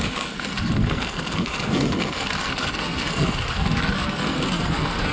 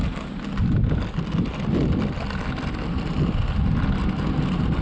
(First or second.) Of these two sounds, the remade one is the first